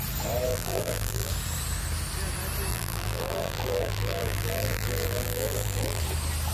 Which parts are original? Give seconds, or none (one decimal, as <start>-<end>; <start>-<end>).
0.0-0.5; 1.3-2.7; 6.0-6.5